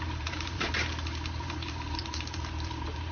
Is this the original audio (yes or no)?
no